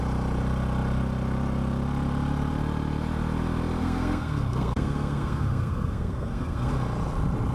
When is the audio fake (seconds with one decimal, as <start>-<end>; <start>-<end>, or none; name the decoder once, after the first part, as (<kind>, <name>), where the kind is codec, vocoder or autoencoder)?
3.8-6.7 (codec, SNAC)